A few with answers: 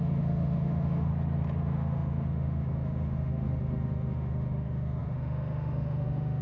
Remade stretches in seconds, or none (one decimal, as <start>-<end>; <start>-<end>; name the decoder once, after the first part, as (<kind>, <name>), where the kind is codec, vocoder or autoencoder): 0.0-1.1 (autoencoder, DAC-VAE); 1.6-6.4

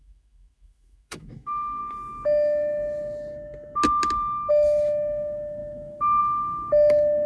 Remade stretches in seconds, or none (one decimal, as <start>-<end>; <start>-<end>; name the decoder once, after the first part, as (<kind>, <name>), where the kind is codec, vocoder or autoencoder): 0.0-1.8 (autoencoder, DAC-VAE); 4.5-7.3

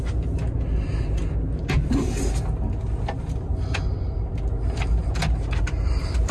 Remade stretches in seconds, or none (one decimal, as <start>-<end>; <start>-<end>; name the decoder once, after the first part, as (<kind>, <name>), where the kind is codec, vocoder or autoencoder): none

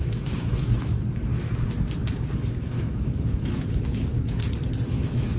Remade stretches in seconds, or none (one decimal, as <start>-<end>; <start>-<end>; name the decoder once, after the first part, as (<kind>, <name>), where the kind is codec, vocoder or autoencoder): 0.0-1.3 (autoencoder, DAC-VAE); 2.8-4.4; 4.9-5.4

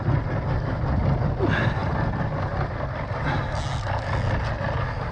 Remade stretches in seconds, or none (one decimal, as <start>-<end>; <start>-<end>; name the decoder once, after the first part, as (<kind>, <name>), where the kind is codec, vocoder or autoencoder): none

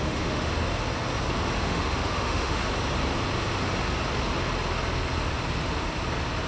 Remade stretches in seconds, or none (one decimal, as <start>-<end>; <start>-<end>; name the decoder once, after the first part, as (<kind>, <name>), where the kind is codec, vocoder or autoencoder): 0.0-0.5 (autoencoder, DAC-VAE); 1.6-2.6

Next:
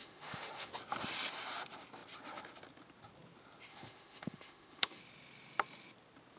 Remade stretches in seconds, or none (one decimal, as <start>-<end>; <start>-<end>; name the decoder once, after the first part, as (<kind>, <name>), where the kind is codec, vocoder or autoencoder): 0.0-0.7 (autoencoder, DAC-VAE); 3.7-5.0

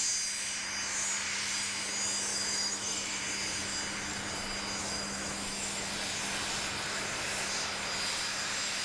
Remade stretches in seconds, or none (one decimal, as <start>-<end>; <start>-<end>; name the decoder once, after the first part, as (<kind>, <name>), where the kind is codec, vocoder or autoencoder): 2.3-3.2 (autoencoder, DAC-VAE); 4.8-5.9